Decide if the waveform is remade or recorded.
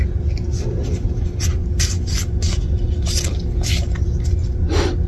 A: recorded